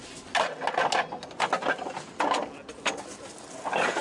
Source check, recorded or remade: recorded